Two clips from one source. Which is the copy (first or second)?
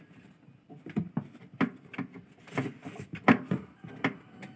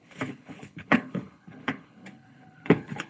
second